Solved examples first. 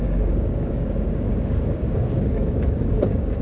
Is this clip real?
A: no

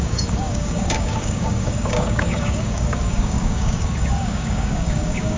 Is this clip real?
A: no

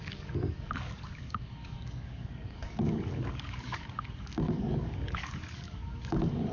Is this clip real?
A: no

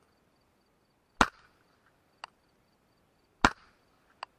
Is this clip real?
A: yes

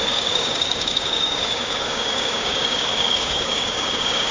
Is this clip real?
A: no